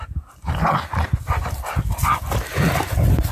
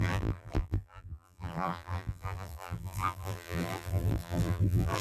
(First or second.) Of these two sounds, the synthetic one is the second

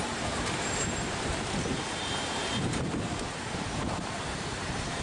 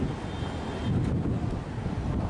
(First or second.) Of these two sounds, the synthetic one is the first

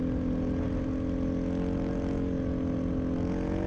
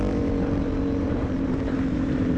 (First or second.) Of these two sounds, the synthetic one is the second